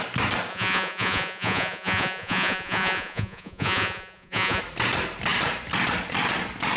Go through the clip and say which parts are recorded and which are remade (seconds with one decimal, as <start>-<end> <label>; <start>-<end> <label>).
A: 0.0-0.5 recorded; 0.5-4.6 remade; 4.6-6.8 recorded